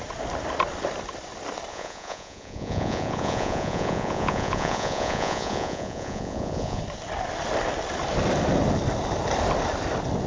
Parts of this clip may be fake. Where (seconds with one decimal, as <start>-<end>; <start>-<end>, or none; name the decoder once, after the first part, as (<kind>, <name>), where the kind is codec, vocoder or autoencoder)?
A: 1.7-6.8 (vocoder, Vocos)